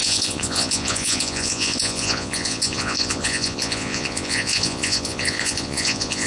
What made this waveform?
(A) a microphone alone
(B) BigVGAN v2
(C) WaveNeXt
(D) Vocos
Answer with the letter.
D